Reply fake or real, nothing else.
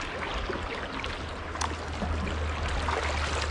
real